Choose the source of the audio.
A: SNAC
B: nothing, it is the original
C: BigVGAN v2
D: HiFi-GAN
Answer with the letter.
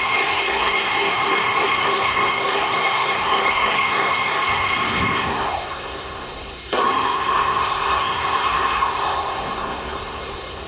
A